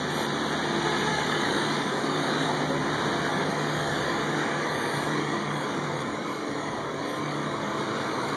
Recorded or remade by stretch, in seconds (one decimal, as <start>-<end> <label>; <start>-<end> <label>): 0.0-1.1 recorded; 1.1-2.5 remade; 2.5-3.3 recorded; 3.3-8.4 remade